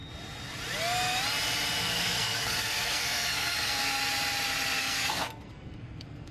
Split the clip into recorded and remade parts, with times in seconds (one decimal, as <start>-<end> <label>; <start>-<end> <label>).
0.0-1.8 recorded; 1.8-4.0 remade; 4.0-4.8 recorded; 4.8-6.3 remade